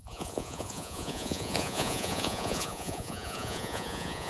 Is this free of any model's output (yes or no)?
no